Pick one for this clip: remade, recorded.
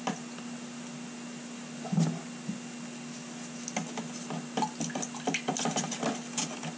recorded